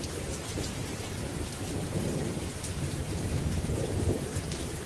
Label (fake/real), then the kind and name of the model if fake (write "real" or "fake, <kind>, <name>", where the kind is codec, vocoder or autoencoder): fake, vocoder, BigVGAN v2